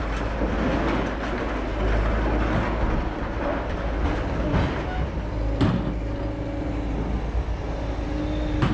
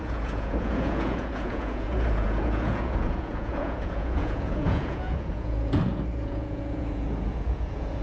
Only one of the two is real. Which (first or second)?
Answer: first